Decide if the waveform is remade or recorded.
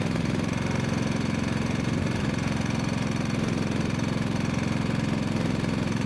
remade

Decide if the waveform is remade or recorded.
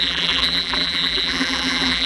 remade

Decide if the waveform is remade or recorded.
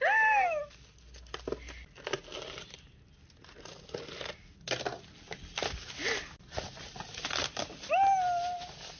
recorded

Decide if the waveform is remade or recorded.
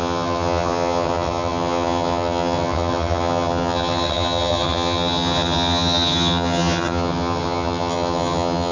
remade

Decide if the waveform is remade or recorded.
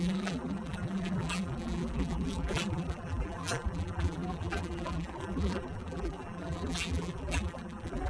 remade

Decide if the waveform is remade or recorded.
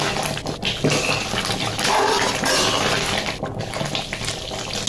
recorded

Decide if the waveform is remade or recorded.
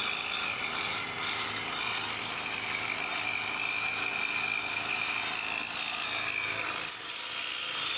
recorded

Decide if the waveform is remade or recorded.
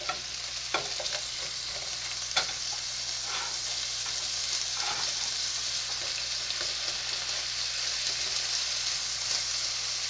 recorded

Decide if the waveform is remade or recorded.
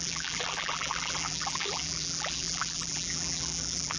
remade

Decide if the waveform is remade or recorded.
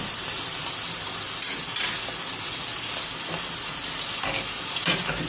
recorded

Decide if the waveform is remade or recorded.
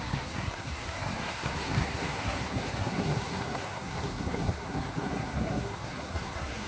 remade